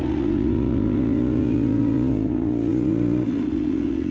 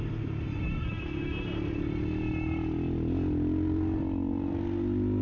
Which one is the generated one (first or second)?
first